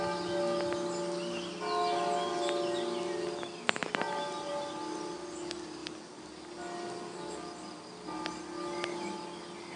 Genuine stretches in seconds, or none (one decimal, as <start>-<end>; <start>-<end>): 0.0-5.8; 7.8-9.8